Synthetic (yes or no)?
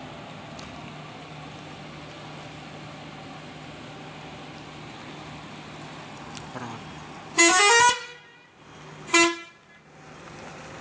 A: no